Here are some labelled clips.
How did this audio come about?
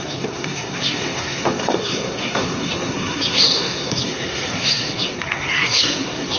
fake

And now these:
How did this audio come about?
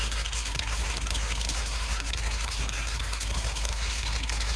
fake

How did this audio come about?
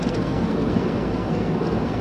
fake